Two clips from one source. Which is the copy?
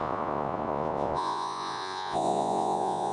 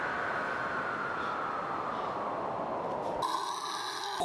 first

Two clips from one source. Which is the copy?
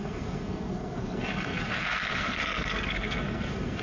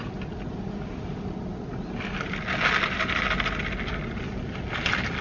first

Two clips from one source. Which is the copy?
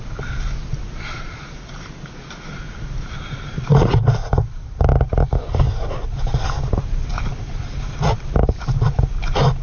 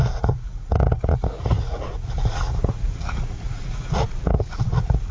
second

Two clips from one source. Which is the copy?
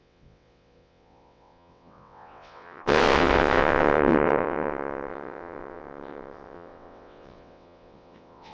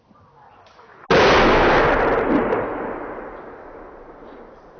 first